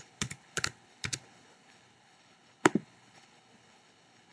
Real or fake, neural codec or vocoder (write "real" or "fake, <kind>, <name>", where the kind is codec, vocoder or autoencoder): fake, codec, HILCodec